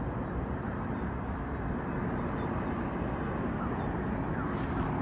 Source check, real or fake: real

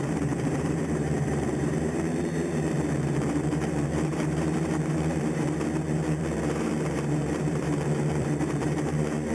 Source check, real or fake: fake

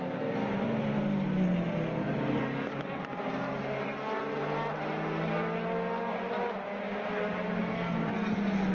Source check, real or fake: real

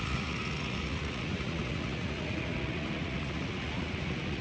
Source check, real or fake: fake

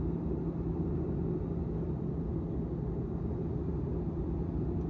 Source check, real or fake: real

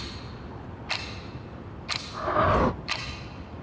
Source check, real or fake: fake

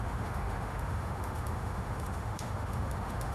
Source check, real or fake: fake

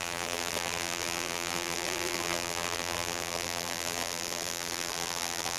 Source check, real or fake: fake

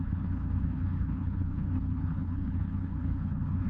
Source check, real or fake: fake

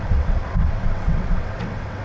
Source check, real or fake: fake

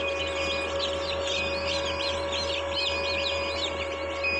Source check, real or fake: real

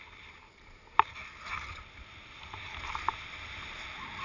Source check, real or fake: real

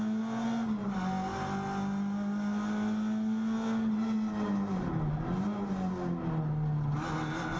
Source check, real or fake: real